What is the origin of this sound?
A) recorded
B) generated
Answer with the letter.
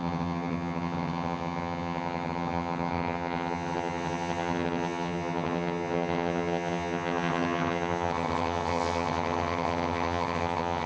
B